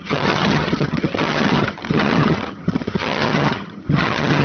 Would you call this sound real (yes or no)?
no